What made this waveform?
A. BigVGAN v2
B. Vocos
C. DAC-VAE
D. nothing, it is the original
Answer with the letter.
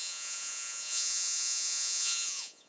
B